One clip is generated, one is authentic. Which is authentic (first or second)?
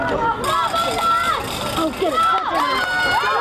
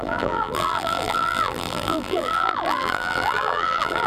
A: first